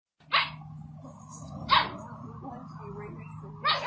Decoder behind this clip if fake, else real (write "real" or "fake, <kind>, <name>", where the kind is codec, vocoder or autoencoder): real